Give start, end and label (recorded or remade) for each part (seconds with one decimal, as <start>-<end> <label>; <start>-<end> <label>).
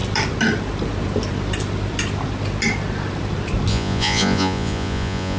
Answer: 0.0-3.7 recorded; 3.7-5.4 remade